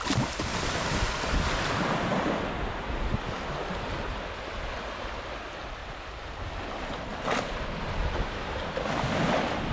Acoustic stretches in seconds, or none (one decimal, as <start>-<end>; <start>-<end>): 0.0-0.5; 1.4-5.8; 6.6-9.7